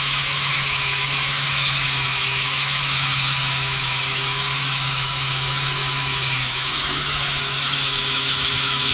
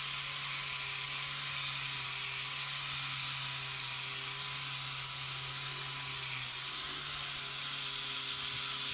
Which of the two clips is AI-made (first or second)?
first